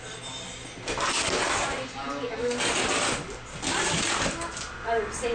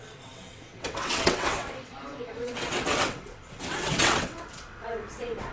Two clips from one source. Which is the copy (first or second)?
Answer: second